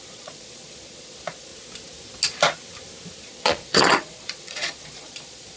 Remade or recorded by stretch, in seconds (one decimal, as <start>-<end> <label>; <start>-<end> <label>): 0.0-1.5 remade; 1.5-3.2 recorded; 3.2-5.6 remade